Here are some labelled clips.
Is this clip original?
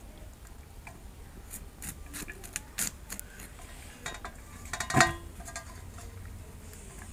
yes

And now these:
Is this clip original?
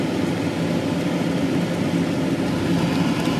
yes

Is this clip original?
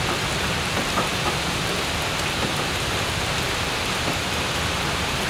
no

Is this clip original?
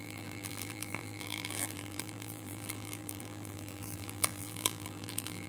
no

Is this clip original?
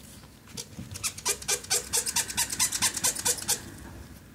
yes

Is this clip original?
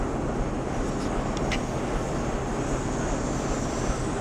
yes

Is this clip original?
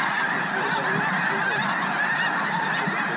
yes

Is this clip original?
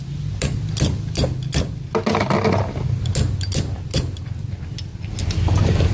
yes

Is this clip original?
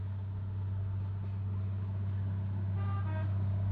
yes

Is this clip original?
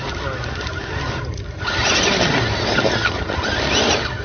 yes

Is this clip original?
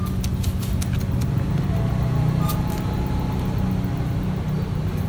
yes